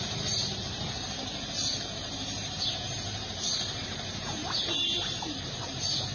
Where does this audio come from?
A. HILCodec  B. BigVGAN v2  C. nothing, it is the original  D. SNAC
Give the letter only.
B